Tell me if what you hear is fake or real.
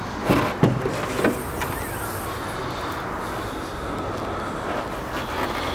real